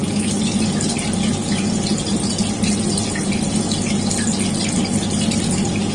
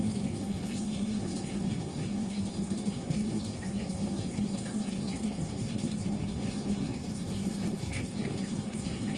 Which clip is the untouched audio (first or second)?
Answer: first